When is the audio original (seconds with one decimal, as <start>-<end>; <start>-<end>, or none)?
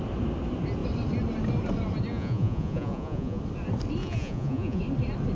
0.0-2.1; 3.4-4.0; 4.8-5.3